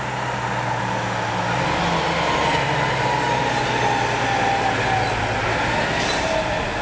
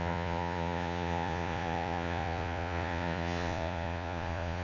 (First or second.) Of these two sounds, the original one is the first